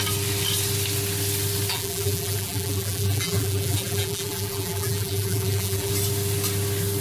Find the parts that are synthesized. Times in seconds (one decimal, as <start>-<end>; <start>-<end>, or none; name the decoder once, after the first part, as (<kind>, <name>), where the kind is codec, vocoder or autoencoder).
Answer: 1.7-5.9 (vocoder, BigVGAN v2)